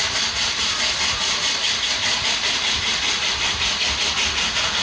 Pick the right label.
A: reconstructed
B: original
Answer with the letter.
B